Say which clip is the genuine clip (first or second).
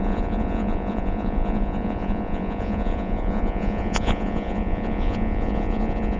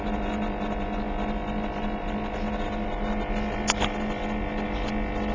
second